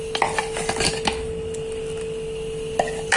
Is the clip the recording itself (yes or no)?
yes